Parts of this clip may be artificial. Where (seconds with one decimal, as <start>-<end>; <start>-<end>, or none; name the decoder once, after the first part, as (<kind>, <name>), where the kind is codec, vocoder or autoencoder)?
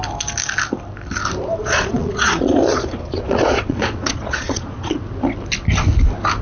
1.6-5.0 (vocoder, Vocos)